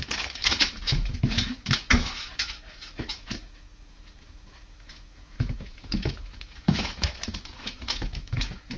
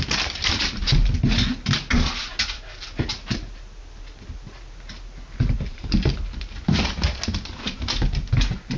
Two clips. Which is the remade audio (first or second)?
first